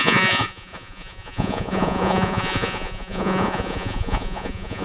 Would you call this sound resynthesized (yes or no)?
yes